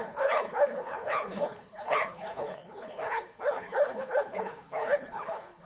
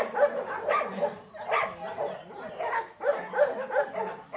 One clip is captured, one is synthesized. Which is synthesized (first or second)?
first